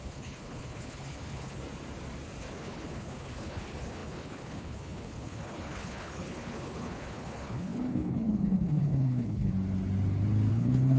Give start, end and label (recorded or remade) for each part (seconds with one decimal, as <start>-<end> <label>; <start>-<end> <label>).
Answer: 0.0-1.6 remade; 1.6-2.4 recorded; 2.4-9.5 remade; 9.5-10.5 recorded; 10.5-11.0 remade